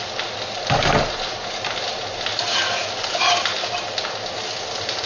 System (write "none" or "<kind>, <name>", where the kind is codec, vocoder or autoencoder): none